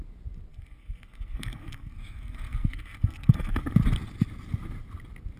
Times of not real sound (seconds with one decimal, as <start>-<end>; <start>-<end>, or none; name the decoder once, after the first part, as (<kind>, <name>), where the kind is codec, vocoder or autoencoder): 0.5-3.6 (codec, SNAC)